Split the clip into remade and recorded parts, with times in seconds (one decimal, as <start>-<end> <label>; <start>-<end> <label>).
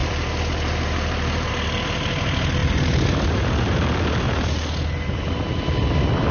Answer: 0.0-1.5 remade; 1.5-2.6 recorded; 2.6-4.6 remade; 4.6-6.3 recorded